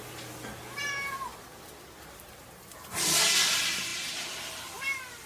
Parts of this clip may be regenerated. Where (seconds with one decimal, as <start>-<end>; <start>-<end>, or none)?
1.3-2.3; 3.9-4.5